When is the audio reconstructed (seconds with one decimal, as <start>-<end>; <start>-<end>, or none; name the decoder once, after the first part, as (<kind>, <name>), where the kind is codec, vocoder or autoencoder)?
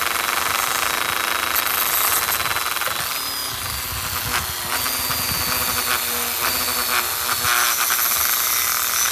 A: none